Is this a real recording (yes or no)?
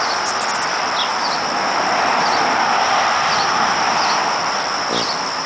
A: yes